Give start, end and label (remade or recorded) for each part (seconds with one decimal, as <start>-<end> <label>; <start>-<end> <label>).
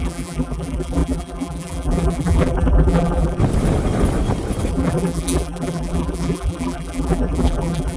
0.0-3.4 remade; 3.4-4.7 recorded; 4.7-8.0 remade